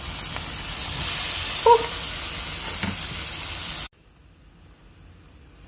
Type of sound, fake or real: real